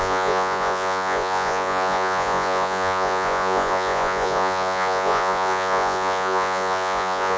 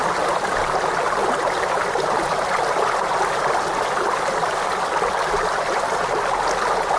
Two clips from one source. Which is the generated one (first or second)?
first